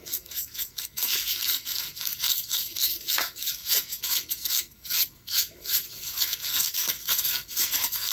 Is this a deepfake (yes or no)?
yes